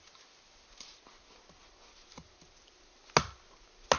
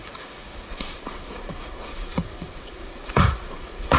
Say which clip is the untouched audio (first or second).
first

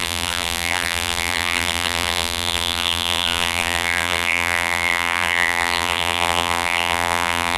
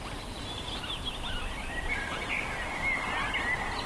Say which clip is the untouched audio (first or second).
second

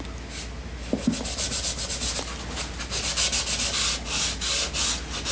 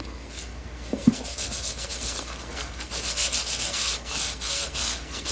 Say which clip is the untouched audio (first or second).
first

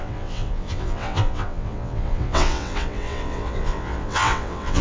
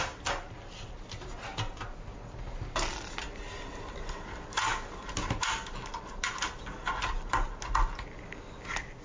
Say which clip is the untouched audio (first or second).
second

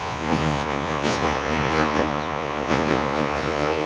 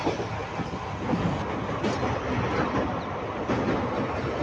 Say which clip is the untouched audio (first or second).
second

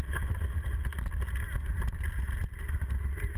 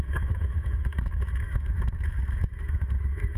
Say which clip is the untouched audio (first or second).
first